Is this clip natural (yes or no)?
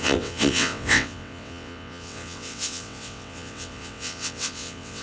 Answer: no